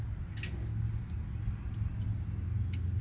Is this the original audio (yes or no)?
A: yes